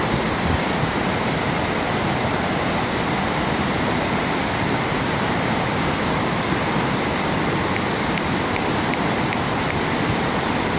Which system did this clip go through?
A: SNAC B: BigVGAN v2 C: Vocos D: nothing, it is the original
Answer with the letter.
B